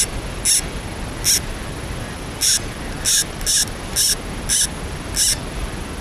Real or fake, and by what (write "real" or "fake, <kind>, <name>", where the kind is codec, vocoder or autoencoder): real